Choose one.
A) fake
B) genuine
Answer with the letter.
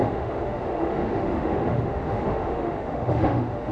A